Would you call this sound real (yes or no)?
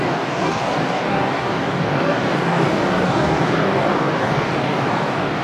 no